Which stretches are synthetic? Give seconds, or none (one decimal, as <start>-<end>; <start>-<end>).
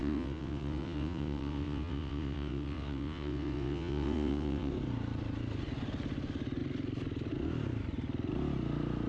0.0-4.7